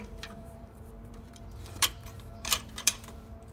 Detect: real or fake fake